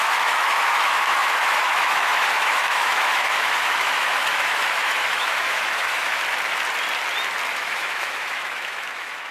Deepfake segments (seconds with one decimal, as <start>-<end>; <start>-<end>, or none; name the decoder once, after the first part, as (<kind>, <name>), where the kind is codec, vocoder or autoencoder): 0.0-6.2 (autoencoder, DAC-VAE); 7.5-9.3